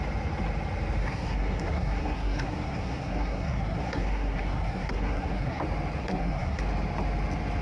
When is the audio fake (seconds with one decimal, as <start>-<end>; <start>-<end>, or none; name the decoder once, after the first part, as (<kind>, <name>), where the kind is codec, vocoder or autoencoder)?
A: 1.0-5.6 (codec, SNAC); 6.0-6.6